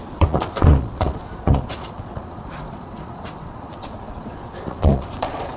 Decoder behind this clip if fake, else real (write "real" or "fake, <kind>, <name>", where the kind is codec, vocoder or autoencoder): fake, vocoder, Vocos